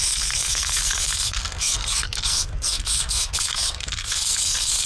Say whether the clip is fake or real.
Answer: fake